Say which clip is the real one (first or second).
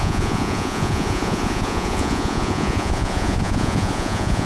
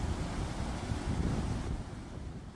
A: second